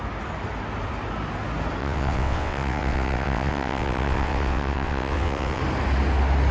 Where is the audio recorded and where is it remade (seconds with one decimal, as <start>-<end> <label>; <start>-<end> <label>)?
0.0-1.8 recorded; 1.8-5.6 remade; 5.6-6.5 recorded